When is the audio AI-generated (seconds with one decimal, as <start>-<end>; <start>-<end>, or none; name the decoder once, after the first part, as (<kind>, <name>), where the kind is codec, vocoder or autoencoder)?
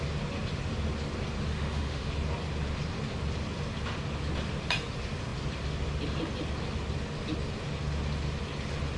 1.5-2.1 (autoencoder, DAC-VAE)